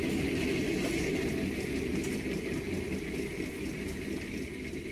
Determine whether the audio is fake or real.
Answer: real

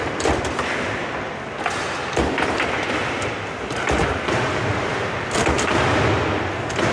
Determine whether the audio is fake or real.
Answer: real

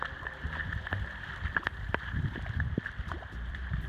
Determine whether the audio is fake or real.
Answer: fake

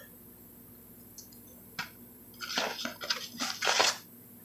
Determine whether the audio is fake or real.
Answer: real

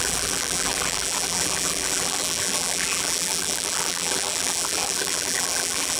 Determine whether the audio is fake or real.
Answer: fake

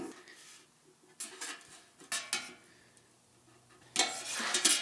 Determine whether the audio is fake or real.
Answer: real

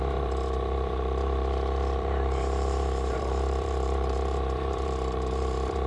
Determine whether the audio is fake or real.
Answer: fake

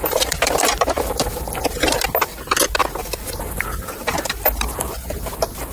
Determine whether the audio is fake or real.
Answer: fake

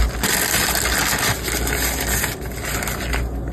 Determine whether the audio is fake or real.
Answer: real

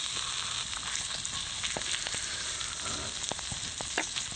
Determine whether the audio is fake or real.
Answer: real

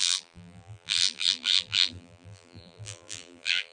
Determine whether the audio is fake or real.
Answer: fake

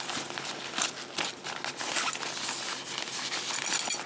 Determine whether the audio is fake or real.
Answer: real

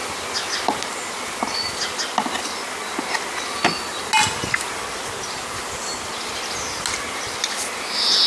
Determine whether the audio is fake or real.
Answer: real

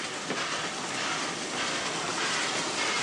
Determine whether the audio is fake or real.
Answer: fake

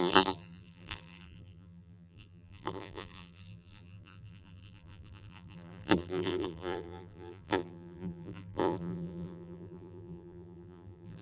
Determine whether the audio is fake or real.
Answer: fake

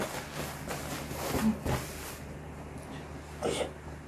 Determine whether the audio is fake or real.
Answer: real